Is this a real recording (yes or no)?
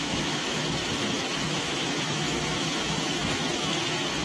no